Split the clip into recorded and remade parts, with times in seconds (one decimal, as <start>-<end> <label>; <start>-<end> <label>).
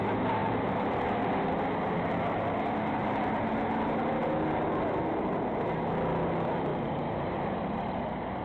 0.0-0.4 recorded; 0.4-1.3 remade; 1.3-3.0 recorded; 3.0-3.5 remade; 3.5-6.7 recorded; 6.7-8.0 remade; 8.0-8.4 recorded